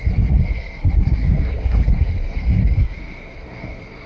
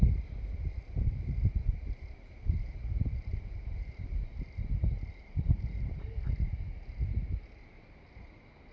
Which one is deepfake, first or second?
first